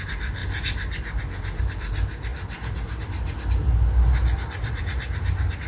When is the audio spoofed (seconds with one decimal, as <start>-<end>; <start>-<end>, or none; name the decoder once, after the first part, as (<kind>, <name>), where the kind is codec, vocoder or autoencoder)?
none